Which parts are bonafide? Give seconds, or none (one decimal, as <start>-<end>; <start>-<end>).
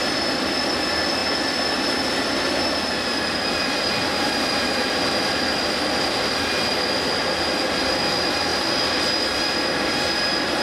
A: 0.0-10.6